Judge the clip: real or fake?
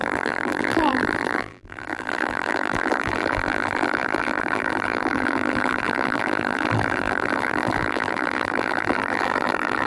fake